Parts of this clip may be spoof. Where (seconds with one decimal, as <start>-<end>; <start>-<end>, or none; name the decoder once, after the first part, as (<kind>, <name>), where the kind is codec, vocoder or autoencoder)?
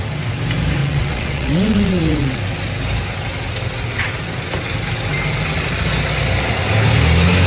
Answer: 0.8-2.4 (vocoder, WaveNeXt)